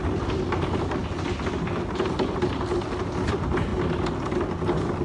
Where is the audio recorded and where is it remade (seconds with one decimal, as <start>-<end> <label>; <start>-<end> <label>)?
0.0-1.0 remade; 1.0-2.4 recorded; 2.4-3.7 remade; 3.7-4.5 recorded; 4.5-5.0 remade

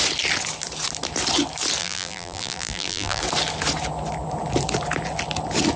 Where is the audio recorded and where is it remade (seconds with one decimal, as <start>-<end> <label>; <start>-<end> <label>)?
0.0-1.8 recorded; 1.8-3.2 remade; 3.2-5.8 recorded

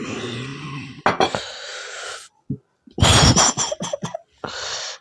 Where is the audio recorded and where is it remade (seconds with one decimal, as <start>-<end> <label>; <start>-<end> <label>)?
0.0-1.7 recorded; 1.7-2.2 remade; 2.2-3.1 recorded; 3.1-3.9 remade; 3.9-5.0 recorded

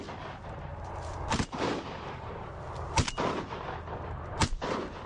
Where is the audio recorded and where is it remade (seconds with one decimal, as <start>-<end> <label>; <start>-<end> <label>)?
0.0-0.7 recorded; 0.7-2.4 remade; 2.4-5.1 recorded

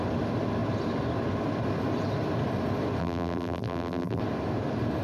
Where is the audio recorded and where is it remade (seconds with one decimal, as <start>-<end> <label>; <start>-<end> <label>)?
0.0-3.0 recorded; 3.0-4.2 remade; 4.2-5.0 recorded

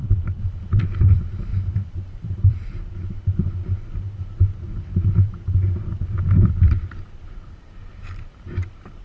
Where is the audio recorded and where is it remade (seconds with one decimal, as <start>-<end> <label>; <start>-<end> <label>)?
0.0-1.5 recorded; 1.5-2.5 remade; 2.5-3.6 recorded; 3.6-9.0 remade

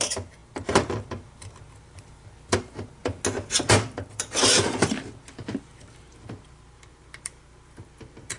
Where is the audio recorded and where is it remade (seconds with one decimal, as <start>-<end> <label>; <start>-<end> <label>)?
0.0-3.0 remade; 3.0-3.5 recorded; 3.5-8.4 remade

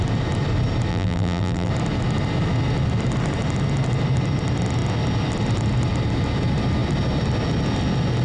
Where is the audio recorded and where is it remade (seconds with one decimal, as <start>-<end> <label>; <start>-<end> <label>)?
0.0-0.9 recorded; 0.9-1.7 remade; 1.7-8.2 recorded